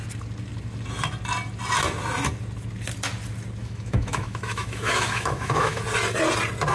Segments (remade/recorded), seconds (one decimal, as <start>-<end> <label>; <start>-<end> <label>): 0.0-3.6 recorded; 3.6-5.8 remade; 5.8-6.7 recorded